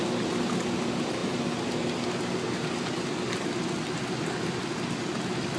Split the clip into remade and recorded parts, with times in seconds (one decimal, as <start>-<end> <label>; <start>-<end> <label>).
0.0-5.6 recorded